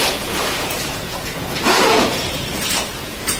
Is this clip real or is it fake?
fake